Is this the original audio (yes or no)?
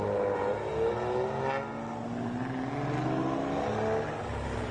yes